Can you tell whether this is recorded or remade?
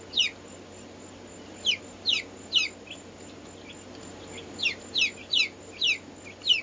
recorded